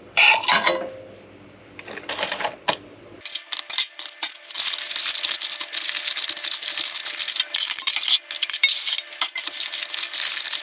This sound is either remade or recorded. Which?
recorded